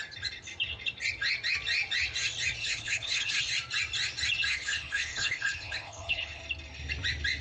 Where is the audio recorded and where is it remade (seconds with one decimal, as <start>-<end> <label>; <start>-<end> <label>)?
0.0-2.6 recorded; 2.6-3.4 remade; 3.4-4.5 recorded; 4.5-6.4 remade; 6.4-7.4 recorded